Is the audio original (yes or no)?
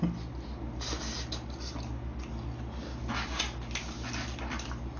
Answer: yes